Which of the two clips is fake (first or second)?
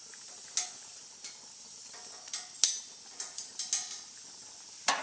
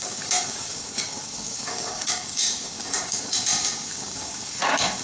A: second